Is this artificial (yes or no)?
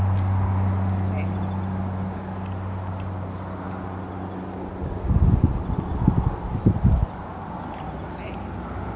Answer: no